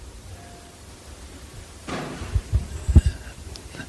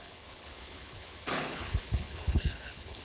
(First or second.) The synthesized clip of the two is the second